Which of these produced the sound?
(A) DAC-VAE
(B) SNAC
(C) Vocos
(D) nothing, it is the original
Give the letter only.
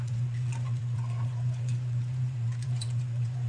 C